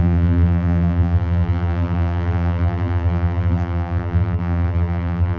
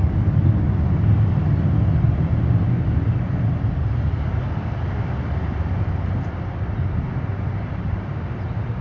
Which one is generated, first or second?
first